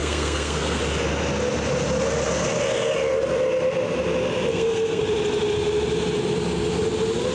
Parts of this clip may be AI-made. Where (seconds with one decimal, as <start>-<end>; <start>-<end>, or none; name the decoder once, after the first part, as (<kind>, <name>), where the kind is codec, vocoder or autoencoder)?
0.0-0.8 (codec, SNAC); 4.5-5.0